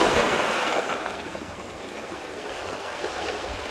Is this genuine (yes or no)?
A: no